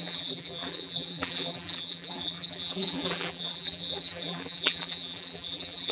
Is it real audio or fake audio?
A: fake